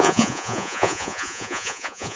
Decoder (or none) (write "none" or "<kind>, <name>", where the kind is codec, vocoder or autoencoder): vocoder, Vocos